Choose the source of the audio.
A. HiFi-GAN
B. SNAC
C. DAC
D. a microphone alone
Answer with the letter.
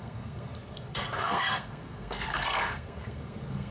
B